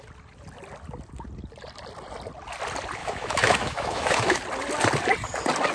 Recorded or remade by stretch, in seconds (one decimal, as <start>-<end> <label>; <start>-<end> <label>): 0.0-3.0 recorded; 3.0-4.4 remade; 4.4-5.7 recorded